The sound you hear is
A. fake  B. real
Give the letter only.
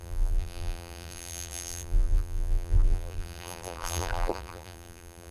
A